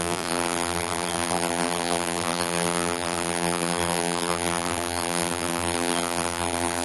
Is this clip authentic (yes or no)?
no